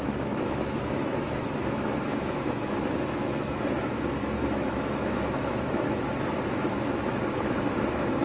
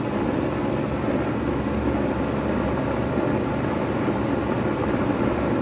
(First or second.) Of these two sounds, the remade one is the first